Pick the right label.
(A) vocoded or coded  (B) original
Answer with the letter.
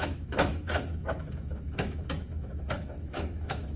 A